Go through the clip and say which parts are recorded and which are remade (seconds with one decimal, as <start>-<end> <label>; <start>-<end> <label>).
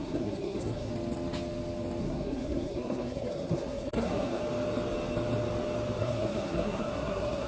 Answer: 0.0-0.9 remade; 0.9-2.0 recorded; 2.0-4.4 remade; 4.4-6.0 recorded; 6.0-7.5 remade